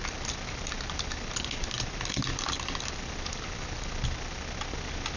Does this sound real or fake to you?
real